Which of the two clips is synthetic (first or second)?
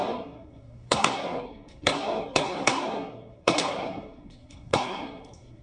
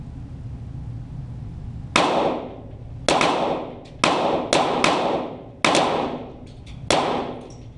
first